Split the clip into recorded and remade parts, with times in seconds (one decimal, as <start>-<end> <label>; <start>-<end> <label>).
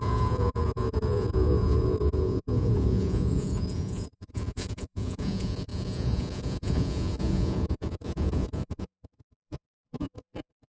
0.0-10.7 remade